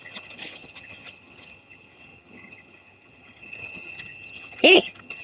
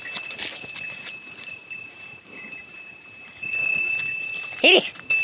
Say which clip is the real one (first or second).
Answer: second